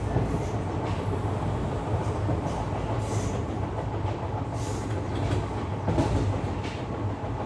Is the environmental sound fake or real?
real